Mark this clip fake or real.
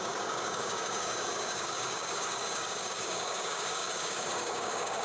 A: fake